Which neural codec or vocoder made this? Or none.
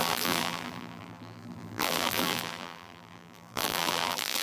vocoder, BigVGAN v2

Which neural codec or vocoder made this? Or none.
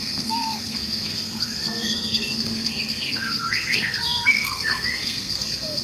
codec, SNAC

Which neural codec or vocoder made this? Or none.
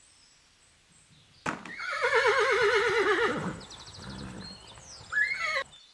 none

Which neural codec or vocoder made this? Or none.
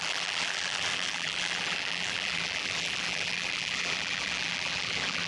vocoder, BigVGAN v2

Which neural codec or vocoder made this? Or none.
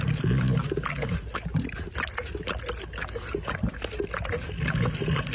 none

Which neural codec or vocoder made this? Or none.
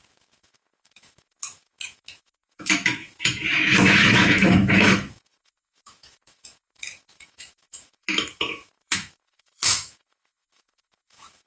autoencoder, DAC-VAE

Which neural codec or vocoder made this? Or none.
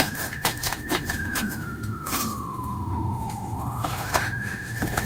autoencoder, DAC-VAE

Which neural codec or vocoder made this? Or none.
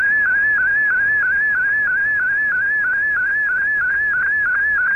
none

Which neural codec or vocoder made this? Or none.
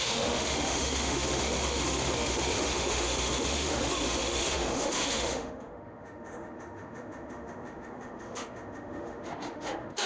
autoencoder, DAC-VAE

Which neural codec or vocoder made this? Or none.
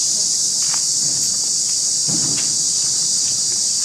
none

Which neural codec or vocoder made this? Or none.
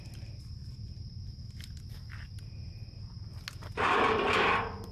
none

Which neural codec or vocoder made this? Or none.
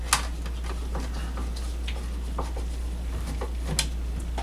none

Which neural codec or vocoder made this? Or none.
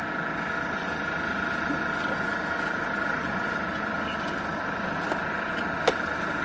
none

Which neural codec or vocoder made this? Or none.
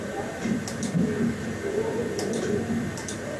vocoder, BigVGAN v2